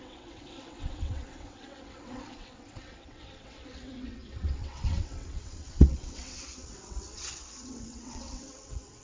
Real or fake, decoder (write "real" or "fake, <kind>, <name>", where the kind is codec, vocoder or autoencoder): fake, vocoder, WaveNeXt